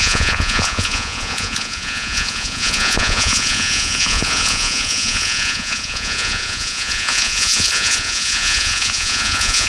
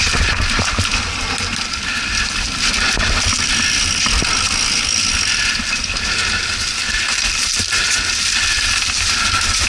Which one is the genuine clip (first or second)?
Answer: second